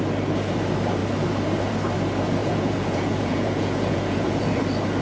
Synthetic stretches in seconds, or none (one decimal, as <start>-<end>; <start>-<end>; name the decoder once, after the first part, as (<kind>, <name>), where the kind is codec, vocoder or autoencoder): 2.4-4.6 (vocoder, Vocos)